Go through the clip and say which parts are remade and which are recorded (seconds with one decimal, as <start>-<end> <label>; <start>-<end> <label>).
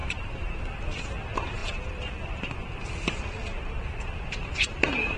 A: 0.0-0.6 remade; 0.6-5.2 recorded